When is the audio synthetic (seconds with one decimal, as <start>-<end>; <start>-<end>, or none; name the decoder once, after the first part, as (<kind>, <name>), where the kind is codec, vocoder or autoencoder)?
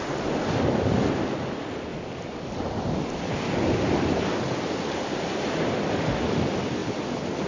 6.8-7.5 (vocoder, BigVGAN v2)